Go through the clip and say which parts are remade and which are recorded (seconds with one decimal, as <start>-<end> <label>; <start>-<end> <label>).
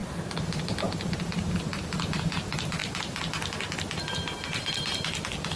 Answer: 0.0-5.6 recorded